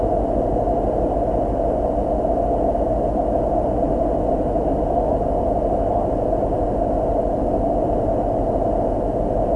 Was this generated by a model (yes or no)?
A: no